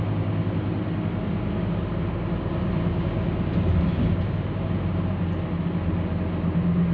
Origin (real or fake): real